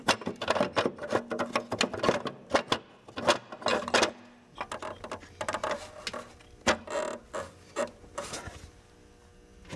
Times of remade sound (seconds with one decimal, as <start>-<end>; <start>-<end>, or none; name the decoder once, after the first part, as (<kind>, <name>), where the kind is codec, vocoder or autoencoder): none